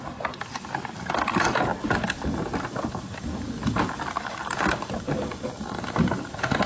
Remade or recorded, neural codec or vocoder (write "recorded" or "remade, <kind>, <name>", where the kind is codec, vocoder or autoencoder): recorded